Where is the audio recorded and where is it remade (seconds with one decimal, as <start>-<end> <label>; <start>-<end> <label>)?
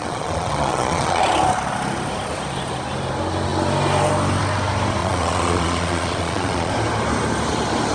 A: 0.0-1.2 remade; 1.2-5.0 recorded; 5.0-6.7 remade; 6.7-7.9 recorded